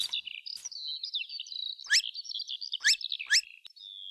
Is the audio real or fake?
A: real